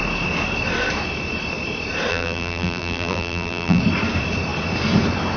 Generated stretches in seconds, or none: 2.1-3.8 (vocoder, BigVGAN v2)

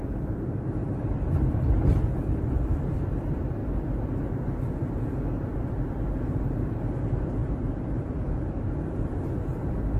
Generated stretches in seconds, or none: 0.0-3.6 (vocoder, BigVGAN v2); 5.9-10.0

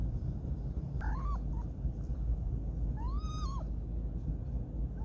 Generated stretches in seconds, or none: 0.0-1.1 (vocoder, BigVGAN v2)

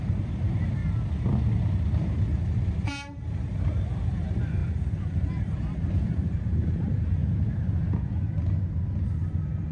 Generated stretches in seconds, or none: 0.0-0.8 (vocoder, BigVGAN v2); 2.2-7.2; 9.1-9.7

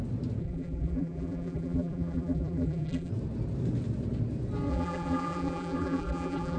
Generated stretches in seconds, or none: 0.4-3.1 (vocoder, BigVGAN v2); 4.7-6.6

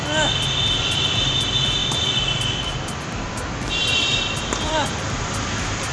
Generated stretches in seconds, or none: 3.8-5.3 (vocoder, BigVGAN v2)

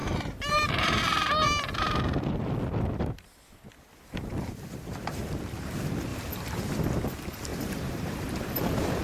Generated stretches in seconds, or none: 0.0-1.0 (vocoder, BigVGAN v2); 6.1-6.6; 7.5-9.0

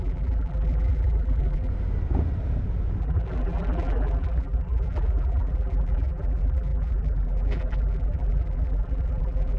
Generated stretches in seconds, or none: 0.0-1.7 (vocoder, BigVGAN v2); 3.0-9.6